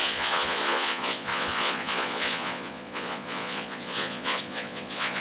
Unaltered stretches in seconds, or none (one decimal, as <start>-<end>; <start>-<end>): none